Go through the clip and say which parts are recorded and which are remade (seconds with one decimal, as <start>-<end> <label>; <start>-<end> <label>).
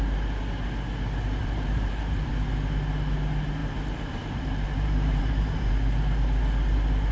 0.0-1.4 recorded; 1.4-2.3 remade; 2.3-3.6 recorded; 3.6-5.7 remade; 5.7-7.1 recorded